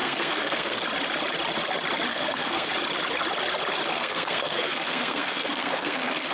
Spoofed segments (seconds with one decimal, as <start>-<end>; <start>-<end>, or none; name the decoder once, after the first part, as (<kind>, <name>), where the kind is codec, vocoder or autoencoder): 0.0-0.8 (codec, SNAC); 2.1-2.7; 3.9-6.3

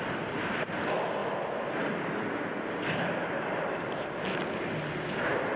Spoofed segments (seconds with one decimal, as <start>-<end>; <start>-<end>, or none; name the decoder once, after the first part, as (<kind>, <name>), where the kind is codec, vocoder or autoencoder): none